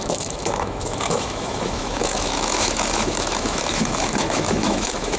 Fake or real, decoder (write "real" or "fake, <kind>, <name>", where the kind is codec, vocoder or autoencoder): fake, autoencoder, DAC-VAE